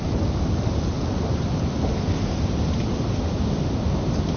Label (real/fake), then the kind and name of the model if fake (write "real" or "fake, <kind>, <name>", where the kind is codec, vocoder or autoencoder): real